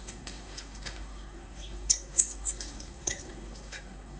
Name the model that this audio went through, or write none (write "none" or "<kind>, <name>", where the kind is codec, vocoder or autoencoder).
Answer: codec, SNAC